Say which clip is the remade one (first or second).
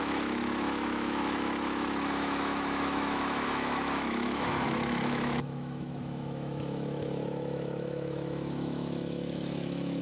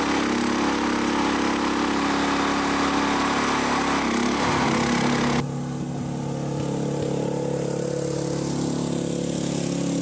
first